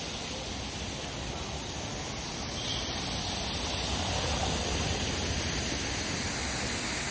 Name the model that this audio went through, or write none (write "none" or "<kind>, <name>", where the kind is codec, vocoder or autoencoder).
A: none